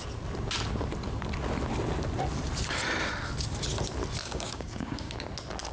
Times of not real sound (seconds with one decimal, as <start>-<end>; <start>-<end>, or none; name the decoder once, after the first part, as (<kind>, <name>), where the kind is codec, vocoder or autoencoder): 4.2-5.1 (codec, DAC)